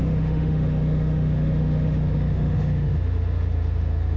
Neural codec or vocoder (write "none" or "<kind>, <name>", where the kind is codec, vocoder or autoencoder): autoencoder, DAC-VAE